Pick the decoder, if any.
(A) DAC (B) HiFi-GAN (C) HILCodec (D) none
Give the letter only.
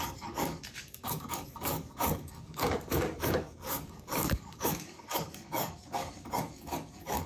A